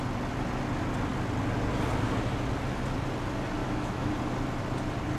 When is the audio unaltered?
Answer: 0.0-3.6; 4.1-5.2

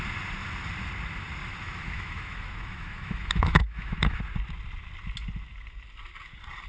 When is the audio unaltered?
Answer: 0.0-1.4; 4.2-6.7

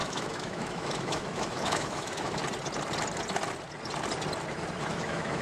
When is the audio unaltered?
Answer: 2.4-4.9

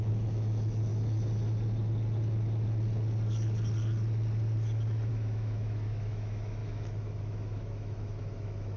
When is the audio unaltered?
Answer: 0.9-5.1

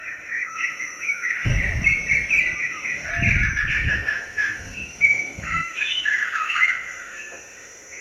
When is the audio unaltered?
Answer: 1.5-2.6; 3.1-3.7

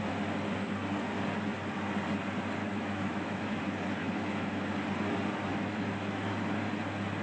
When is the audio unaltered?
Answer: 0.0-2.6; 3.6-4.0; 4.7-5.5; 6.3-7.2

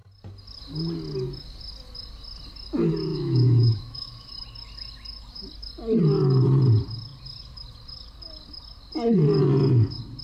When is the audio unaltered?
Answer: 0.0-3.1; 4.3-10.2

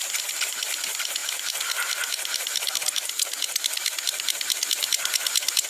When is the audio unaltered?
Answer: 0.0-5.7